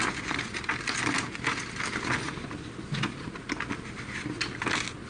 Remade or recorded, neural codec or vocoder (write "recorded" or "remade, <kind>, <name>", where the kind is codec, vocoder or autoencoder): recorded